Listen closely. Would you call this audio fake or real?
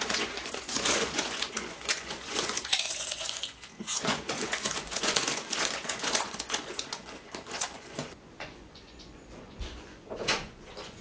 fake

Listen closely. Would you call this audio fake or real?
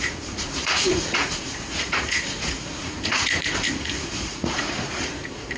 fake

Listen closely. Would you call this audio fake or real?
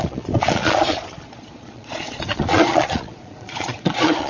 fake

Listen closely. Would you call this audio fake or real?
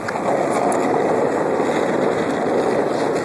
real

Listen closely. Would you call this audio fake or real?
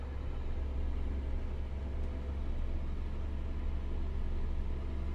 real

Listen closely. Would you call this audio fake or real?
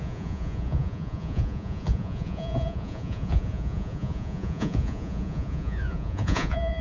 fake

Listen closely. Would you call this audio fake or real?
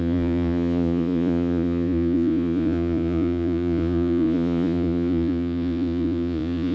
fake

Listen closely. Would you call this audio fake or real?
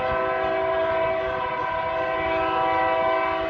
real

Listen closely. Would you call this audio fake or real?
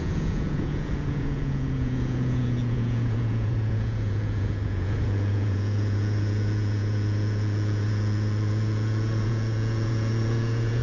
fake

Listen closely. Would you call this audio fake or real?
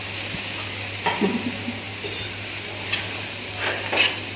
real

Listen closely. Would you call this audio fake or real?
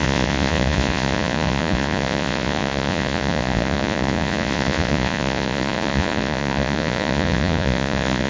fake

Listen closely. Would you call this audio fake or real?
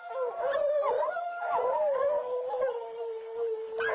real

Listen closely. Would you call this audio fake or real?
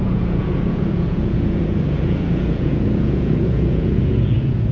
fake